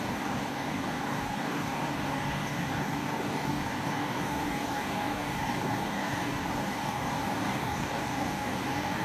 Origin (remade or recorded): remade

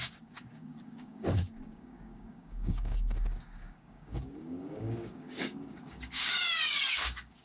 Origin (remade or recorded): remade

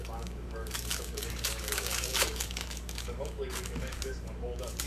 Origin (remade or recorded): remade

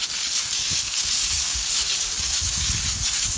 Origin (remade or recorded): remade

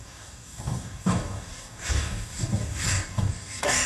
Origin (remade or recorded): remade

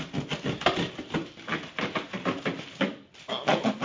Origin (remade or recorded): recorded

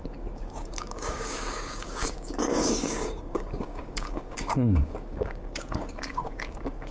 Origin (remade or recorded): remade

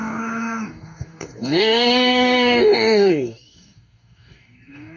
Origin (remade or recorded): remade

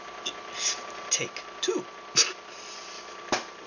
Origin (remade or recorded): recorded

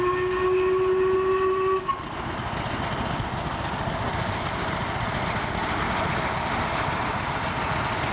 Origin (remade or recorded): recorded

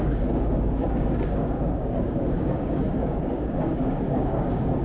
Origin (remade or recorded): remade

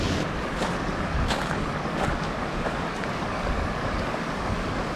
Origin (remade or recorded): remade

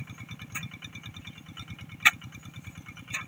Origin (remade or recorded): recorded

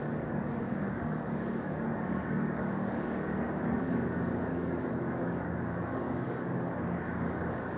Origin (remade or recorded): remade